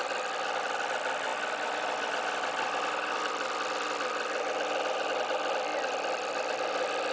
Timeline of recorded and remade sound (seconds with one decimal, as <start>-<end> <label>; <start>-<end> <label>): 0.0-1.3 remade; 1.3-3.1 recorded; 3.1-7.1 remade